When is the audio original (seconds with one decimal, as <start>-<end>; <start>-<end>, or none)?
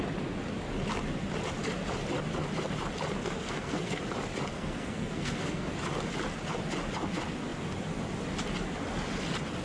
0.0-3.2; 4.0-4.5; 5.7-9.6